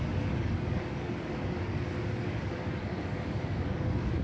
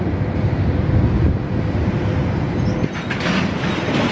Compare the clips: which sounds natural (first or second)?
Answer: second